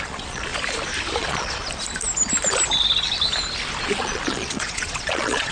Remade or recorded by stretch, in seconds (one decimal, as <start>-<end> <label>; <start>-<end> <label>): 0.0-0.5 remade; 0.5-1.2 recorded; 1.2-1.6 remade; 1.6-3.8 recorded; 3.8-5.5 remade